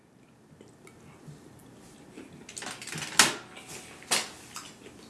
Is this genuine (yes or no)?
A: yes